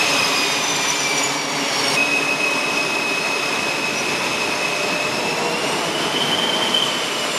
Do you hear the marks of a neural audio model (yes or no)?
no